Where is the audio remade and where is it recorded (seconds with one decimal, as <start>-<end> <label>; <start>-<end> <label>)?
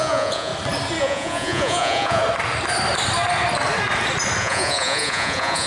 0.0-0.5 remade; 0.5-1.0 recorded; 1.0-2.2 remade; 2.2-4.4 recorded; 4.4-5.7 remade